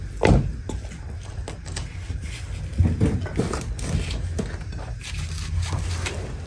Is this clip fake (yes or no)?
no